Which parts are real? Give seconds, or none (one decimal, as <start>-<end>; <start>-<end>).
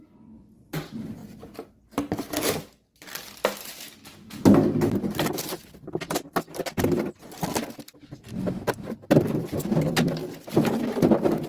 1.2-5.3; 7.5-8.0; 10.2-10.8